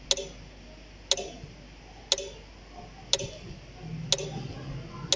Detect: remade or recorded recorded